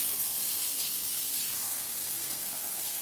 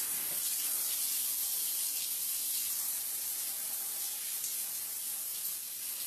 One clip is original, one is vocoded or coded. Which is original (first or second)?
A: second